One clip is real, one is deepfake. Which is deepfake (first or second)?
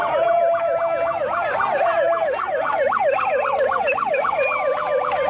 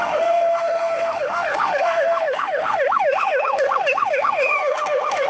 second